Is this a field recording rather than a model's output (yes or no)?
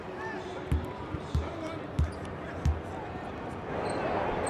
yes